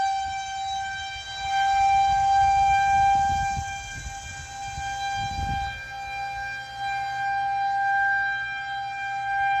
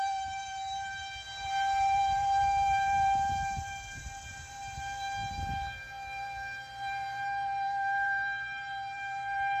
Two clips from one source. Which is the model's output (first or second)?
second